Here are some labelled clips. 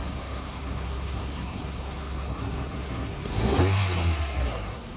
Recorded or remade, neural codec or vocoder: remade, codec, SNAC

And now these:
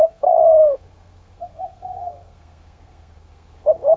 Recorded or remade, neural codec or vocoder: remade, codec, SNAC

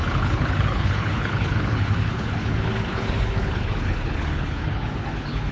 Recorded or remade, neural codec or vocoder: remade, codec, HILCodec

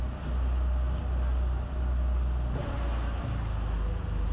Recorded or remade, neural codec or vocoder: recorded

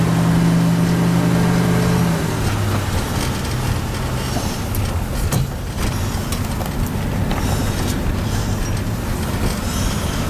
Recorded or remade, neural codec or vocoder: recorded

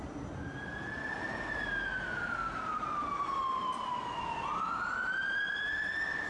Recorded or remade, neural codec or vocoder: recorded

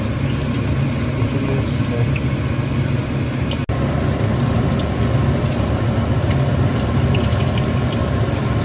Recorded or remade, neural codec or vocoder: recorded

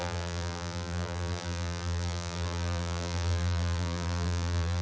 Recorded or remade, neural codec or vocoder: remade, vocoder, BigVGAN v2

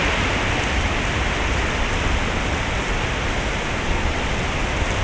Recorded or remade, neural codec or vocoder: recorded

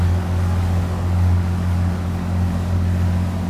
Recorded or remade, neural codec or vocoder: remade, codec, DAC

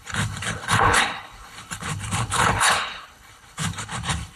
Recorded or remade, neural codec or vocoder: remade, codec, HILCodec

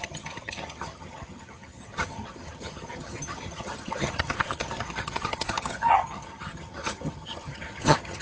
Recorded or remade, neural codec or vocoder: remade, vocoder, HiFi-GAN